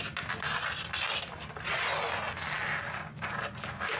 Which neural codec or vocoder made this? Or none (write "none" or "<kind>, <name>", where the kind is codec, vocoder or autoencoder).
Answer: none